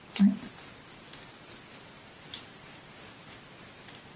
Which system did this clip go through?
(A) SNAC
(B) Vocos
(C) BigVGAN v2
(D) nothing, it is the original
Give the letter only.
D